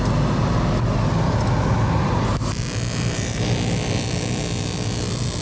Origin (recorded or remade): recorded